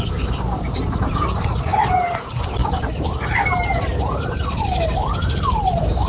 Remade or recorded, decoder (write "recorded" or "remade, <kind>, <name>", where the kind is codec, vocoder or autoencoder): remade, vocoder, BigVGAN v2